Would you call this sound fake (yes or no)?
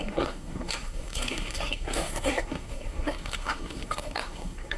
yes